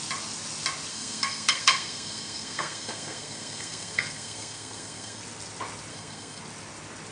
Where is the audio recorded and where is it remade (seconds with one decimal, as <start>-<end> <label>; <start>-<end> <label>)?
0.0-0.9 recorded; 0.9-5.2 remade; 5.2-5.9 recorded; 5.9-6.4 remade; 6.4-7.1 recorded